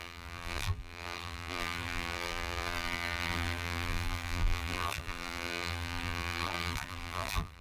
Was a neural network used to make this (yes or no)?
yes